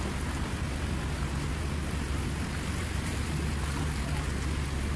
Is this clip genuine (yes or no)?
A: yes